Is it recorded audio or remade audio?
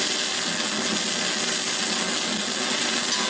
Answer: recorded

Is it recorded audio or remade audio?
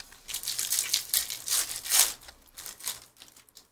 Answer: recorded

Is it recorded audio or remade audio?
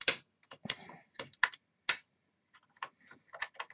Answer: recorded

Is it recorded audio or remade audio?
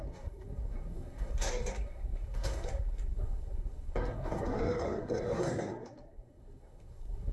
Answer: remade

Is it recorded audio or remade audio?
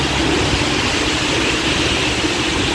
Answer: recorded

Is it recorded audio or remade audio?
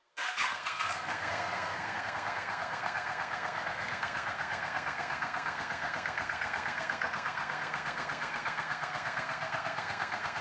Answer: remade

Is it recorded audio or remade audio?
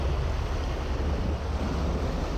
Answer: recorded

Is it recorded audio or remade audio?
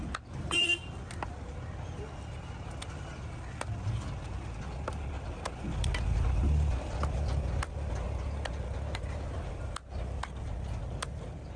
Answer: recorded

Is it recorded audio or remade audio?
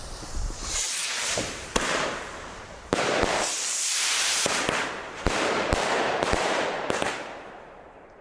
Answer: remade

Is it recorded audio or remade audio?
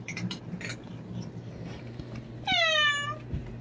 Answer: recorded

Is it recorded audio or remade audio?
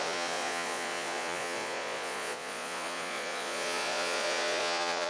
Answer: remade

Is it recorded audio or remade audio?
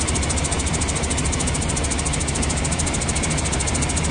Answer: recorded